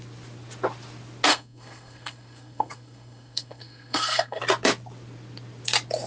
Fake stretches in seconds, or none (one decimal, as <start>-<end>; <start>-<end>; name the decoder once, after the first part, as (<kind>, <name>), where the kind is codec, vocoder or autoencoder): 1.3-4.4 (codec, SNAC)